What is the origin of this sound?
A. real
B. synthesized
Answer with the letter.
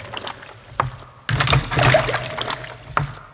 A